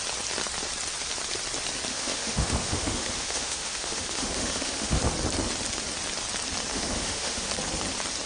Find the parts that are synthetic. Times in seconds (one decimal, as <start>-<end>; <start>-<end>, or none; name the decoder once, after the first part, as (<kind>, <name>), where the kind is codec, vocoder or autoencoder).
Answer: 1.9-5.0 (autoencoder, DAC-VAE); 6.7-7.5